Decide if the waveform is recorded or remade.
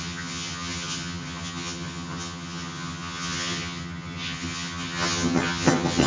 remade